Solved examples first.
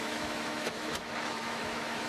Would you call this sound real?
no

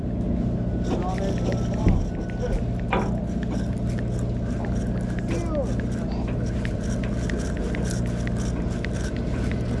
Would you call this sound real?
yes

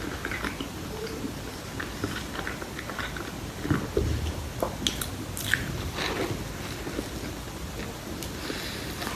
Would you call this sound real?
yes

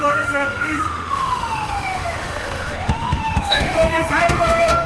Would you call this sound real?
no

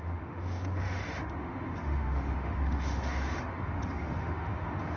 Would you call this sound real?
no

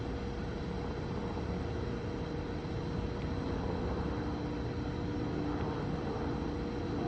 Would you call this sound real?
yes